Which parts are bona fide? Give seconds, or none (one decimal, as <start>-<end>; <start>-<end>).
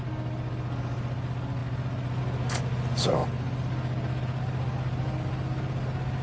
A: 0.0-6.2